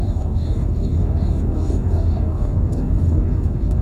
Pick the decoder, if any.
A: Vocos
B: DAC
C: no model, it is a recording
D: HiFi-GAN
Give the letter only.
B